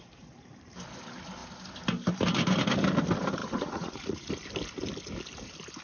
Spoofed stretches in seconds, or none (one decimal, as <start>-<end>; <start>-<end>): 3.4-4.3